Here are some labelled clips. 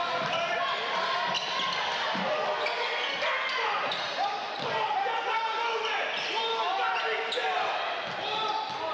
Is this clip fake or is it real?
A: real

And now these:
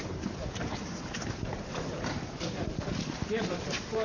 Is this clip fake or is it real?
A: fake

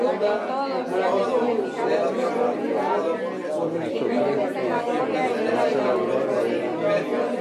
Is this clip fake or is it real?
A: real